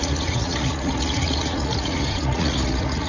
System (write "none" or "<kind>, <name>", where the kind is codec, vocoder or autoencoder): vocoder, Vocos